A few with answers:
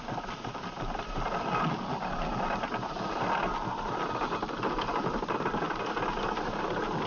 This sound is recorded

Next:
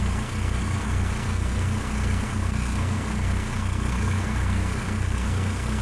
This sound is remade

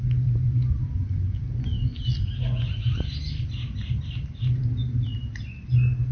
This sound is recorded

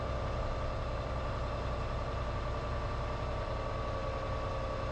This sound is recorded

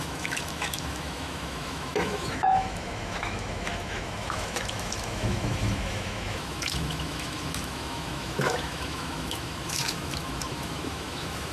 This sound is remade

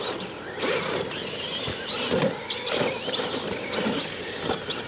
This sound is recorded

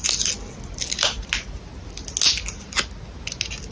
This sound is recorded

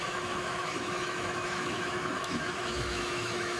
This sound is remade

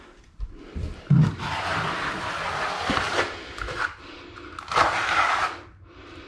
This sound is recorded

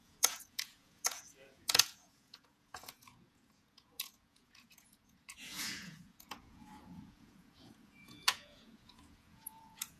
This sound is remade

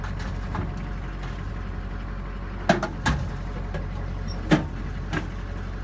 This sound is recorded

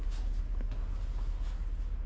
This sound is recorded